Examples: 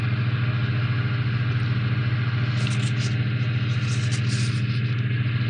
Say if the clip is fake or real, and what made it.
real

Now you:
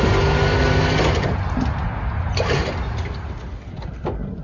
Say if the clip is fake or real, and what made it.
real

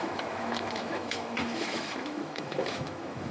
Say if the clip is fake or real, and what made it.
fake, autoencoder, DAC-VAE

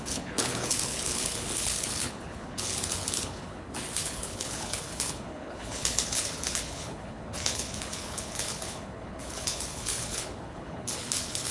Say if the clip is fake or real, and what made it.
fake, codec, HILCodec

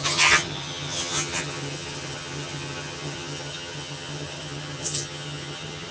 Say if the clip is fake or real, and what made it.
fake, vocoder, HiFi-GAN